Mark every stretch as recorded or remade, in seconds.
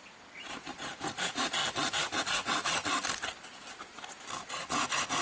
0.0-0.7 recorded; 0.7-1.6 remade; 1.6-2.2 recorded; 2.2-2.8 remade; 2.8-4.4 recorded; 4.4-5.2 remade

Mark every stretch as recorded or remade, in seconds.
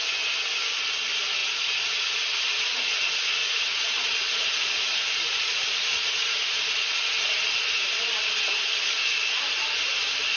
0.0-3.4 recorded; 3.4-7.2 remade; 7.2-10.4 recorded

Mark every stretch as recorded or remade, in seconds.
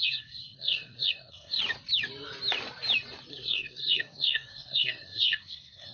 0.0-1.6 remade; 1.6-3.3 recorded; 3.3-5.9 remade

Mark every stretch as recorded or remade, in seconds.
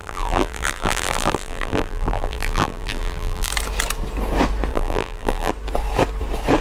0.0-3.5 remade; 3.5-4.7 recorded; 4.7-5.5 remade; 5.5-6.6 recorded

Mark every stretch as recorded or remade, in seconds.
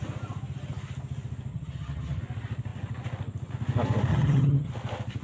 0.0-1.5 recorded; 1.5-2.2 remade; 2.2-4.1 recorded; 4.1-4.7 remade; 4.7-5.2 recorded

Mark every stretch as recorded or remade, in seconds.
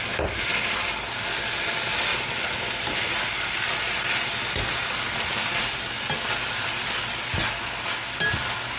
0.0-8.8 recorded